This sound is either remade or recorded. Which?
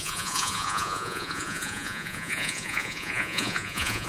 remade